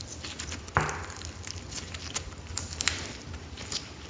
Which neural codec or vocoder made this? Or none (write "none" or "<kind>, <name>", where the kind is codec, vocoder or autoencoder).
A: none